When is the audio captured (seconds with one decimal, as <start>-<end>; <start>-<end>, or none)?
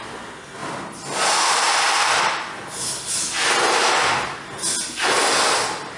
0.0-0.6; 3.5-6.0